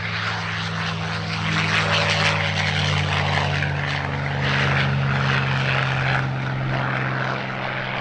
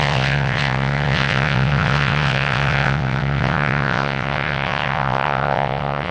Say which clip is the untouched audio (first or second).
first